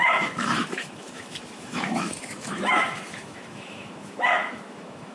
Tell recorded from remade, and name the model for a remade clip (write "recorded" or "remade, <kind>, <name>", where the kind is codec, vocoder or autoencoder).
remade, autoencoder, DAC-VAE